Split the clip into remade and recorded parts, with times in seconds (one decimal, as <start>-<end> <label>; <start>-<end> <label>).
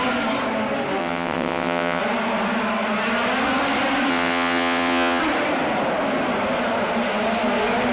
0.0-1.0 recorded; 1.0-2.0 remade; 2.0-4.1 recorded; 4.1-5.2 remade; 5.2-7.9 recorded